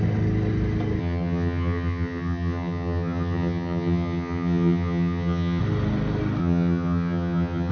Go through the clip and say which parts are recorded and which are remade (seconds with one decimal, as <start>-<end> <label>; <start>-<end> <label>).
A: 0.0-1.0 recorded; 1.0-5.6 remade; 5.6-6.4 recorded; 6.4-7.7 remade